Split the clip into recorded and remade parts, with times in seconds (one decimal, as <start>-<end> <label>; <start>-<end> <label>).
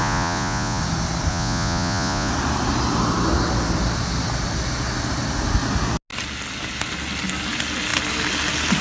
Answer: 0.0-0.8 remade; 0.8-1.3 recorded; 1.3-2.3 remade; 2.3-8.8 recorded